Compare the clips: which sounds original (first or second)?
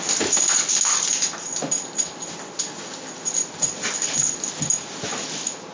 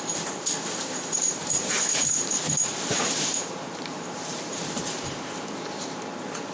first